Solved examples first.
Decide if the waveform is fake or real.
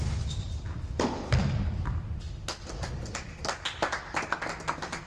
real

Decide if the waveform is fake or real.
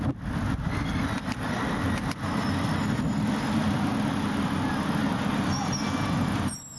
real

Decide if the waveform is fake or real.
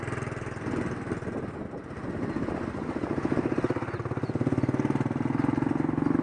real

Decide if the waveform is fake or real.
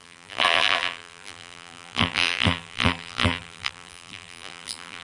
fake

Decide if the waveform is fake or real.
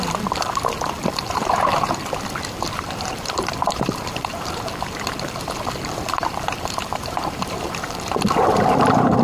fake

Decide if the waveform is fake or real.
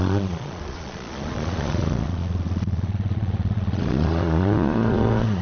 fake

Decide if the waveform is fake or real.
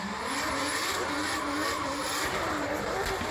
real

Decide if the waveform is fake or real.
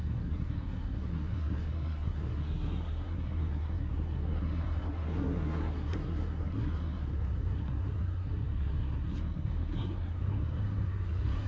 fake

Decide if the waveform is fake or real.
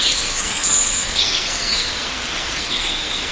fake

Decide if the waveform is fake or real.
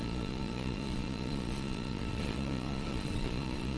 fake